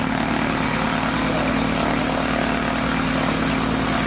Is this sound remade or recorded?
recorded